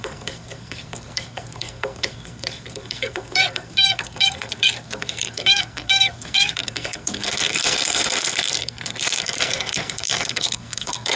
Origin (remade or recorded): remade